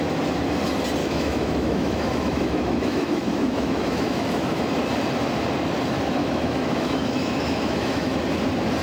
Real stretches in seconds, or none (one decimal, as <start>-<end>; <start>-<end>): 0.0-1.0; 4.6-6.2; 8.2-8.8